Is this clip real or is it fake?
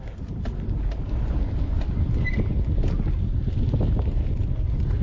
real